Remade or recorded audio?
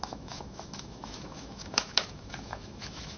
remade